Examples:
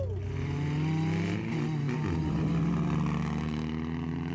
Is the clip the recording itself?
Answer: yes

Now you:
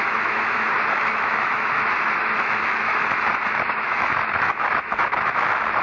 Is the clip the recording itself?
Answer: no